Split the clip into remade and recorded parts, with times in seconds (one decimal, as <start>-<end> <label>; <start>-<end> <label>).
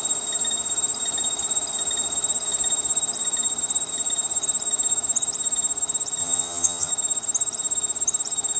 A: 0.0-6.2 recorded; 6.2-6.9 remade; 6.9-8.6 recorded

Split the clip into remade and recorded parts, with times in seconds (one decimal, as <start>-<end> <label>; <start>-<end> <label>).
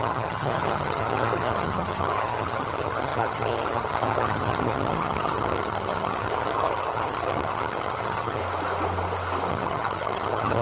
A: 0.0-8.4 remade; 8.4-9.5 recorded; 9.5-10.6 remade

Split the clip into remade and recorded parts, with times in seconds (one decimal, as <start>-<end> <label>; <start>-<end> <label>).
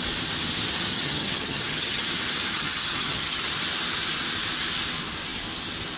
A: 0.0-0.9 recorded; 0.9-2.0 remade; 2.0-2.5 recorded; 2.5-3.4 remade; 3.4-6.0 recorded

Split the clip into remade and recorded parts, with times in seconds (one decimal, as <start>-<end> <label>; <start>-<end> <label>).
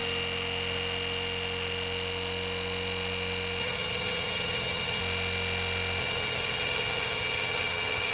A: 0.0-3.6 recorded; 3.6-5.0 remade; 5.0-6.0 recorded; 6.0-8.1 remade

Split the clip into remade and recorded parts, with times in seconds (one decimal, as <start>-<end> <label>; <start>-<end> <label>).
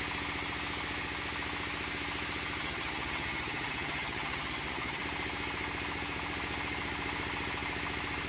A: 0.0-2.6 recorded; 2.6-5.0 remade; 5.0-8.3 recorded